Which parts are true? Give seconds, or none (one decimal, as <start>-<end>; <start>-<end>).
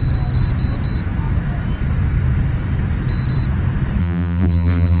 0.0-4.0